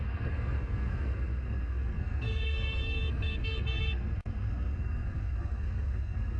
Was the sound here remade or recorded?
remade